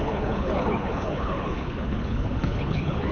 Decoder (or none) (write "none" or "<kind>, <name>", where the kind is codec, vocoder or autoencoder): codec, HILCodec